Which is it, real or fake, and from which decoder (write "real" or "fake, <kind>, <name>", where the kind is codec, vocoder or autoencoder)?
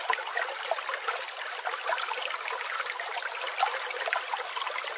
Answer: real